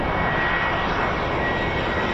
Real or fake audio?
real